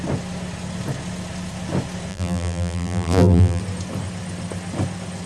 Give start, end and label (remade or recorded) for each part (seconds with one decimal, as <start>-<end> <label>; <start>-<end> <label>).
0.0-2.1 recorded; 2.1-3.6 remade; 3.6-5.3 recorded

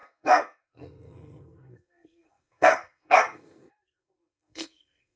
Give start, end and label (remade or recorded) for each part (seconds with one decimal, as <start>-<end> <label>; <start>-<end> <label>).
0.0-5.2 remade

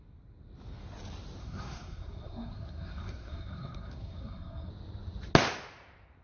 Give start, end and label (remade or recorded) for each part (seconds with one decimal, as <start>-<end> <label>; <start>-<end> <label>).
0.0-1.4 recorded; 1.4-4.7 remade; 4.7-6.2 recorded

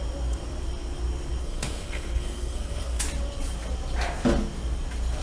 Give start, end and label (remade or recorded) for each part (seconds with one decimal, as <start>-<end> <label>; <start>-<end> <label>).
0.0-1.4 recorded; 1.4-3.0 remade; 3.0-5.2 recorded

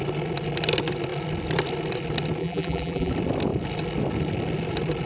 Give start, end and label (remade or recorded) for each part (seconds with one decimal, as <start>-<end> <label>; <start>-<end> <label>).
0.0-2.4 recorded; 2.4-3.1 remade; 3.1-5.1 recorded

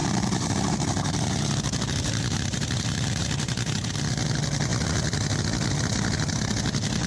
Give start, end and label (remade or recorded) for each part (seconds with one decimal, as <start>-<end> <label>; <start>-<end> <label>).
0.0-3.9 remade; 3.9-7.1 recorded

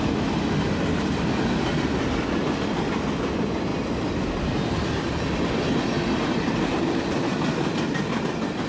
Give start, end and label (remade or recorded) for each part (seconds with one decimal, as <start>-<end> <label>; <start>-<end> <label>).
0.0-8.7 recorded

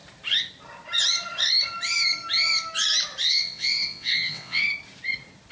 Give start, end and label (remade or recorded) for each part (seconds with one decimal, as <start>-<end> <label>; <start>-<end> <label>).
0.0-3.3 recorded; 3.3-4.6 remade; 4.6-5.5 recorded